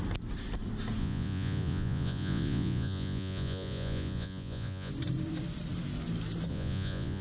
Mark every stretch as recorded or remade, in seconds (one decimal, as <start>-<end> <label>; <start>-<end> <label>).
0.0-1.0 recorded; 1.0-4.9 remade; 4.9-6.5 recorded; 6.5-7.2 remade